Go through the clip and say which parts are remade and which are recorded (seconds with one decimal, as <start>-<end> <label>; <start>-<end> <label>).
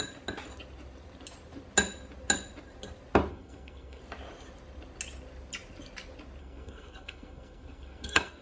0.0-3.3 recorded; 3.3-4.0 remade; 4.0-6.4 recorded; 6.4-8.4 remade